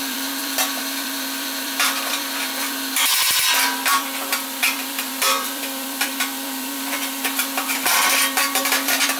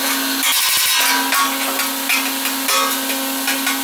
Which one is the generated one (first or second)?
first